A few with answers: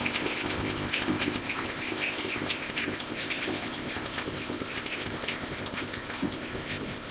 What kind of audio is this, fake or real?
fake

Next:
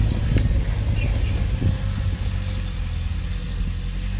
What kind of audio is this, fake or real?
real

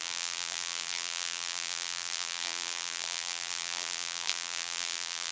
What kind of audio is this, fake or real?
fake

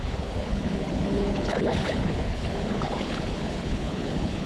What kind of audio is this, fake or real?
fake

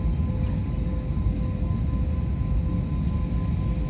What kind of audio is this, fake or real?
real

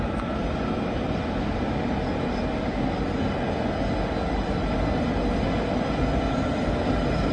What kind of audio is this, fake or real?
real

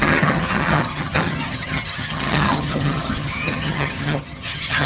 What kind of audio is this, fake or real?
fake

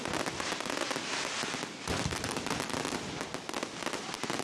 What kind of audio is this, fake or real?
real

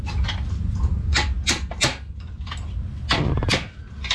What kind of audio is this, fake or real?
real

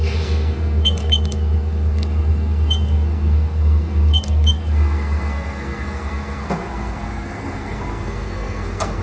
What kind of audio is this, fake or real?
fake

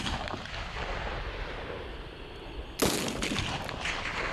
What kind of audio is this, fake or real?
real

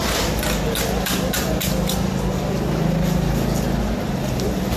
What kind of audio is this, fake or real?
real